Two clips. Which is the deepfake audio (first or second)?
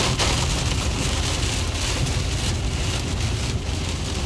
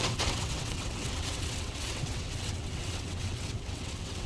second